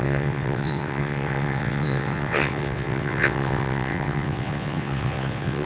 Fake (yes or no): yes